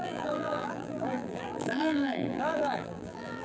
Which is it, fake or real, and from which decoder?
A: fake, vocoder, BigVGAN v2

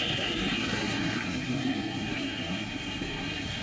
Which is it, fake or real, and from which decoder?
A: fake, codec, SNAC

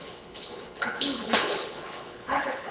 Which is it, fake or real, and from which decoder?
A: fake, codec, HILCodec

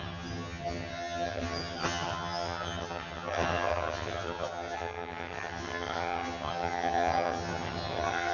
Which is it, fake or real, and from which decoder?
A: fake, vocoder, HiFi-GAN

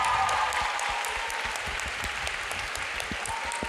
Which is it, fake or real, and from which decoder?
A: real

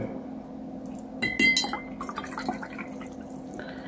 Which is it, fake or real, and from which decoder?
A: real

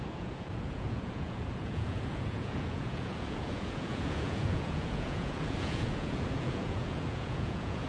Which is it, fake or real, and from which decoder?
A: fake, vocoder, Vocos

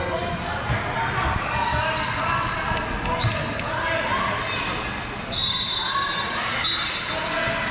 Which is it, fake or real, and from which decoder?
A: real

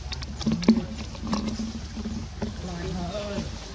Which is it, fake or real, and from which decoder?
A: real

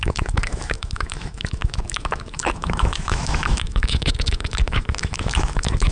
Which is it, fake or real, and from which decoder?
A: fake, autoencoder, DAC-VAE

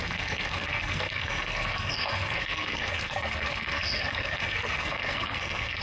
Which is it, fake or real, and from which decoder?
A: fake, codec, SNAC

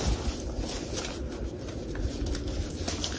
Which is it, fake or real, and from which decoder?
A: real